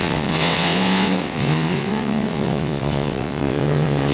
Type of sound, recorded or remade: remade